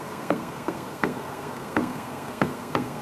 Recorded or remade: remade